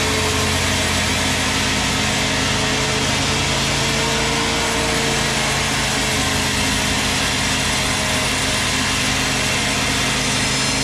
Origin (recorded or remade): recorded